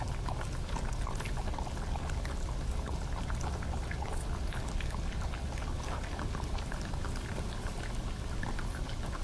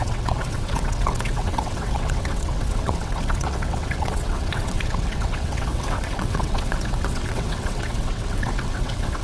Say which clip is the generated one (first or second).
second